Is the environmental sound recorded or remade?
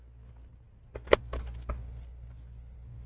recorded